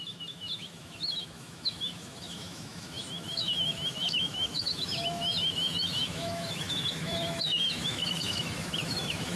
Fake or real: fake